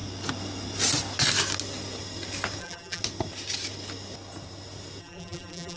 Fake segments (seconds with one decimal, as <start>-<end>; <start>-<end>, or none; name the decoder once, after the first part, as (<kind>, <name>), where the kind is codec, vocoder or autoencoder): 2.6-3.0 (vocoder, BigVGAN v2); 5.0-5.8